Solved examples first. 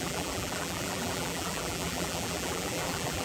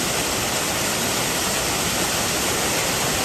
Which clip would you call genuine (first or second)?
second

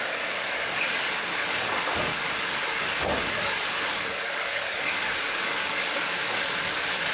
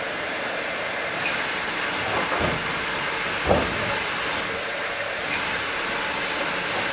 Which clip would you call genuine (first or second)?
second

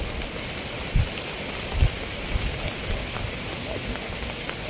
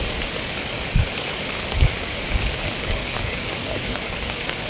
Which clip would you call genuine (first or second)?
first